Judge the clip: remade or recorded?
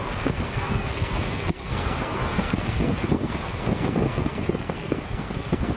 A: remade